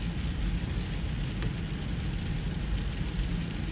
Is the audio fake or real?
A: fake